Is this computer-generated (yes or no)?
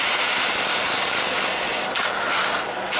no